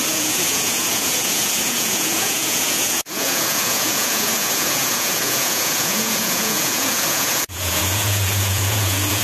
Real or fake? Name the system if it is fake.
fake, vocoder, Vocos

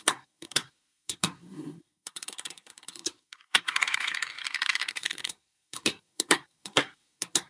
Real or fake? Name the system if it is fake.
fake, codec, SNAC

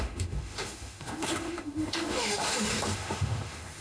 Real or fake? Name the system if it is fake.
fake, autoencoder, DAC-VAE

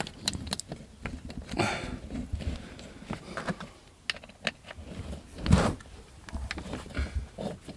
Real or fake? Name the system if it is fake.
real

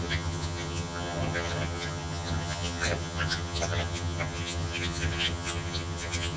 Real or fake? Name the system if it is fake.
fake, vocoder, HiFi-GAN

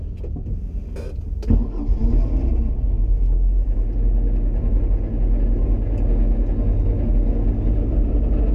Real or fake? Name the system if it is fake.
real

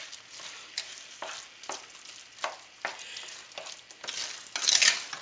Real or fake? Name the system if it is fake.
real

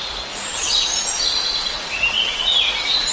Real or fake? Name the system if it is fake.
fake, vocoder, Vocos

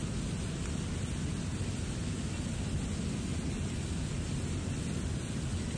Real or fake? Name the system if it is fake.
real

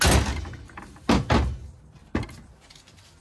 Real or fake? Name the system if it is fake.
real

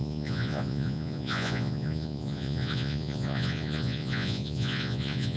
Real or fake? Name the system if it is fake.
fake, vocoder, Vocos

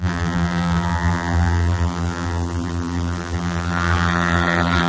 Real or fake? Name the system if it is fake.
fake, vocoder, BigVGAN v2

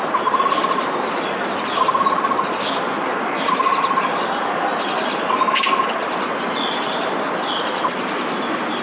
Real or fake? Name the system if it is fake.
real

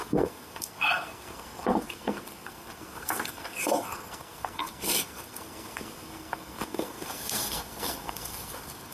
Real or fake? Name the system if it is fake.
fake, codec, SNAC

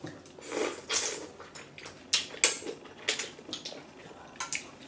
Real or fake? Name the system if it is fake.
real